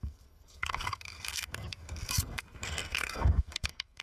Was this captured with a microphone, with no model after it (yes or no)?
no